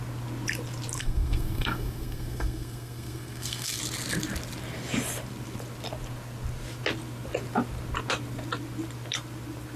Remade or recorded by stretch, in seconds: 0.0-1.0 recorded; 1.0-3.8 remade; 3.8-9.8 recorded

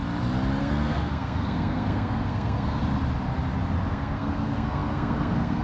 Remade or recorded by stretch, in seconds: 0.0-0.6 recorded; 0.6-2.8 remade; 2.8-3.9 recorded; 3.9-5.6 remade